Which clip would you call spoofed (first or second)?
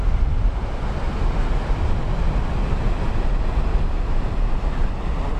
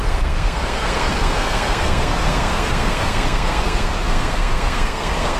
second